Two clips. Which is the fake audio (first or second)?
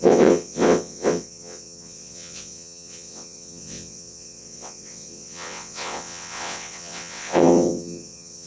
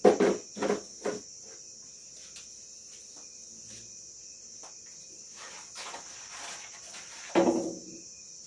first